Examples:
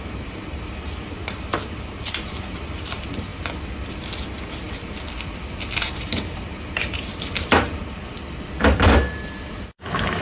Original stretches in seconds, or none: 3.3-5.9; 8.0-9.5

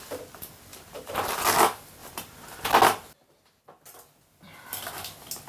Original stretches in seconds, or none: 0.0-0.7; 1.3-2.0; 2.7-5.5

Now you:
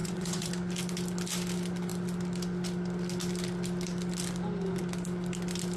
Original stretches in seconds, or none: 0.5-5.8